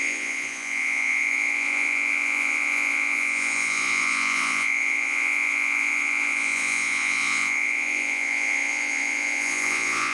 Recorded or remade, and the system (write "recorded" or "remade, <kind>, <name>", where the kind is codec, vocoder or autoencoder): remade, vocoder, Vocos